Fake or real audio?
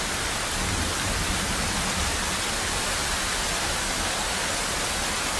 real